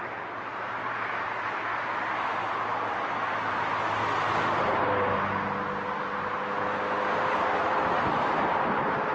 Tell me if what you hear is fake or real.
real